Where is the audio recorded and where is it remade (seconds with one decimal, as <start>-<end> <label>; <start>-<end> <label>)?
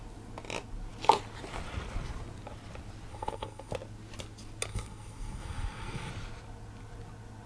0.0-3.1 recorded; 3.1-3.7 remade; 3.7-4.7 recorded; 4.7-6.1 remade; 6.1-7.5 recorded